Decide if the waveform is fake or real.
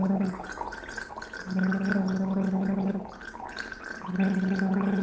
real